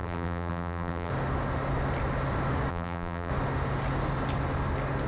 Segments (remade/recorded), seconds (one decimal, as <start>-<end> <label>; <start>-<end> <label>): 0.0-1.1 remade; 1.1-2.7 recorded; 2.7-3.3 remade; 3.3-5.1 recorded